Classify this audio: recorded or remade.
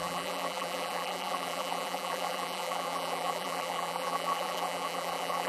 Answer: remade